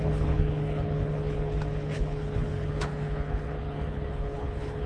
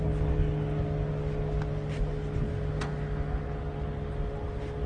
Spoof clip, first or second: first